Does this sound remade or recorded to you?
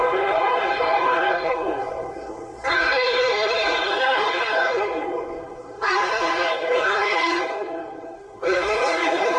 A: remade